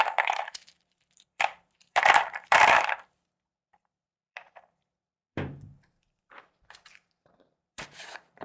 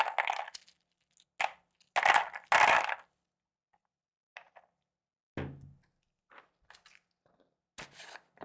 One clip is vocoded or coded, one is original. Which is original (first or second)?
second